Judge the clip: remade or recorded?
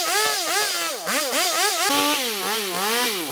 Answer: recorded